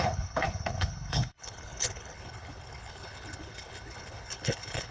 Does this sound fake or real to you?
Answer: fake